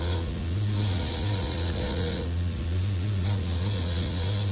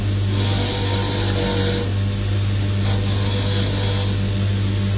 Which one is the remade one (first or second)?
first